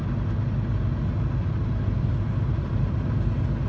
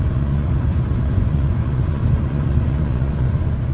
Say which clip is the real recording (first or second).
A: first